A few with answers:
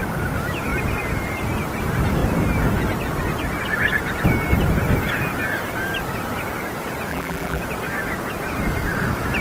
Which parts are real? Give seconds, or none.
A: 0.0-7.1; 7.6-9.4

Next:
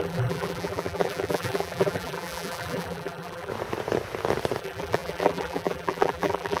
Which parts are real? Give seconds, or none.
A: 3.5-4.6

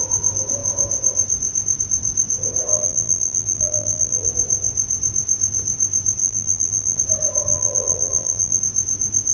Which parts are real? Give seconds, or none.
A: 0.0-2.7; 4.3-6.2; 7.0-7.5; 8.6-9.3

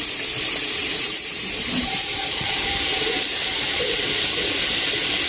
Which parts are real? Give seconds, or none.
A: 0.0-0.8; 4.0-5.3

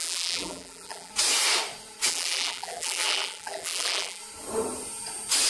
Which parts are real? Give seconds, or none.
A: 1.1-2.1; 4.2-5.5

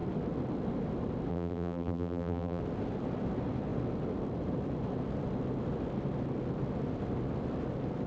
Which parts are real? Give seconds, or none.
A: 0.0-1.3; 2.6-8.1

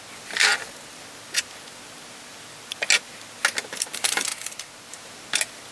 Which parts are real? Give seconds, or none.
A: 0.0-5.7

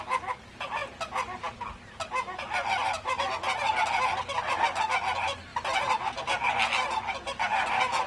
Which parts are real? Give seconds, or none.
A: 0.0-8.1